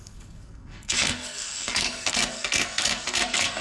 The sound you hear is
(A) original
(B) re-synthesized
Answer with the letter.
B